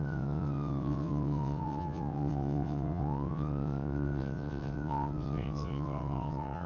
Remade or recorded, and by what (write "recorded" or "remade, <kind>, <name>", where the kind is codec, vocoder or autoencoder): remade, vocoder, WaveNeXt